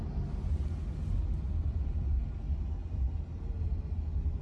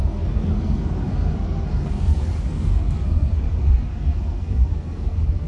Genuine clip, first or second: first